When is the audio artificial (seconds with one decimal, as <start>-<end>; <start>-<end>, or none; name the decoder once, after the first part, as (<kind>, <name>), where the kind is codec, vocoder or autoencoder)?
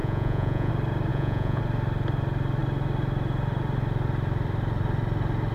0.0-0.7 (vocoder, Vocos); 1.1-1.6